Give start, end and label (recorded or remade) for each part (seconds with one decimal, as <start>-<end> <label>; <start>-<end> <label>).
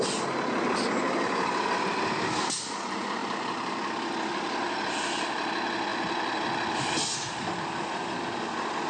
0.0-8.9 recorded